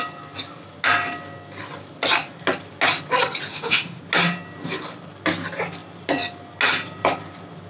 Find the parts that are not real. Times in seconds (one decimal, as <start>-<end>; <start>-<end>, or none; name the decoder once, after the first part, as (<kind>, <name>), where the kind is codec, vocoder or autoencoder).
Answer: 3.5-4.0 (autoencoder, DAC-VAE)